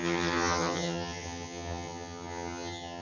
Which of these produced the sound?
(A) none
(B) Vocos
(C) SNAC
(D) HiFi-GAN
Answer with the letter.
D